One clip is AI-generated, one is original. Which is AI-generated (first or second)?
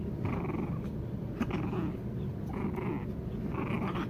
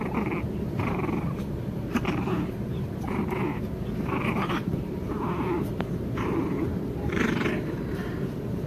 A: second